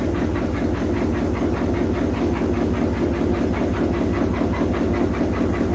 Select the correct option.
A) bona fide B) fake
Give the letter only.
A